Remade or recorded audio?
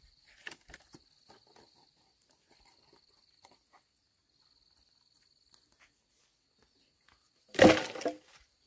recorded